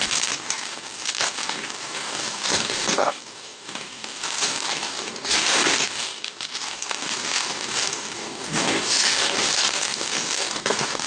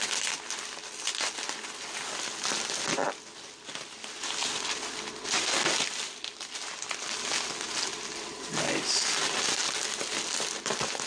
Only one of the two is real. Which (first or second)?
second